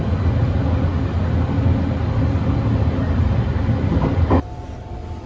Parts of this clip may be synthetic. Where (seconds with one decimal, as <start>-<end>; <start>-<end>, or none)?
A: none